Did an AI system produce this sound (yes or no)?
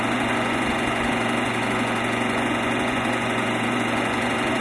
yes